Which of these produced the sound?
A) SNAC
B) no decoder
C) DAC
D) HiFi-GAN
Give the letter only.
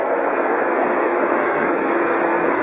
A